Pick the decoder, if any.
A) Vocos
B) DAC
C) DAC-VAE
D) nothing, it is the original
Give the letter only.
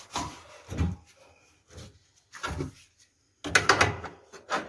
D